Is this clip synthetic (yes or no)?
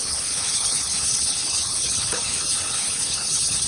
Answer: yes